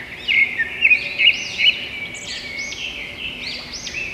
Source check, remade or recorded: recorded